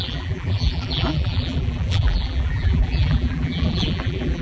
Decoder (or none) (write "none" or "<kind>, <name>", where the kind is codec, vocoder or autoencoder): vocoder, BigVGAN v2